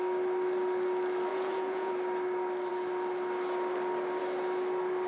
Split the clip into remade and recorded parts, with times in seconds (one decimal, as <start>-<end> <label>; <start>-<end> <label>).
0.0-1.3 recorded; 1.3-1.9 remade; 1.9-5.1 recorded